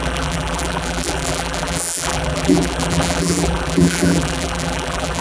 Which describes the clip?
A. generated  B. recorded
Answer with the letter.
A